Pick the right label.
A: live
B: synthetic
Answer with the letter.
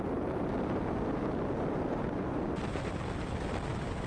A